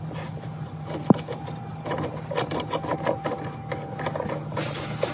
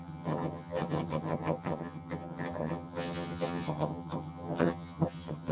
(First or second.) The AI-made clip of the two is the second